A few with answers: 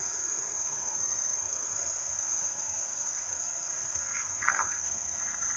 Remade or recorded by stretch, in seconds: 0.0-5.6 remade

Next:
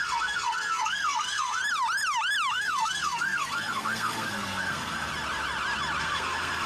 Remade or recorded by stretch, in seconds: 0.0-1.6 remade; 1.6-2.5 recorded; 2.5-5.1 remade; 5.1-6.0 recorded; 6.0-6.7 remade

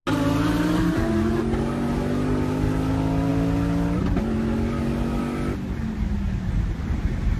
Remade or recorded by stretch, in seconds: 0.0-7.4 recorded

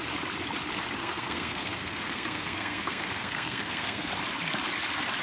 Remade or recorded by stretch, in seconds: 0.0-1.0 recorded; 1.0-4.1 remade; 4.1-5.2 recorded

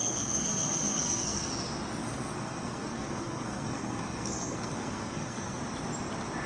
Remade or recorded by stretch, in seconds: 0.0-1.5 remade; 1.5-2.0 recorded; 2.0-5.6 remade; 5.6-6.5 recorded